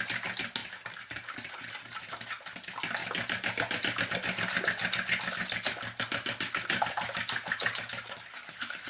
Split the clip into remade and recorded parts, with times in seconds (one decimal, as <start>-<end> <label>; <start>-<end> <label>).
0.0-8.9 recorded